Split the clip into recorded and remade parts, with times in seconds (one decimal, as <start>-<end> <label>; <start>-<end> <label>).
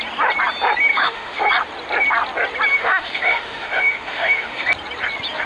0.0-0.9 recorded; 0.9-1.5 remade; 1.5-2.7 recorded; 2.7-4.7 remade; 4.7-5.5 recorded